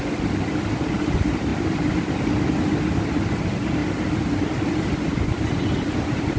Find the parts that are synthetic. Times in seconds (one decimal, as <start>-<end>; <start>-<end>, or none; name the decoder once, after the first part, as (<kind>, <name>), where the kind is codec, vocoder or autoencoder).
none